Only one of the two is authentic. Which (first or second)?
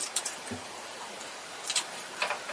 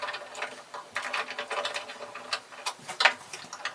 second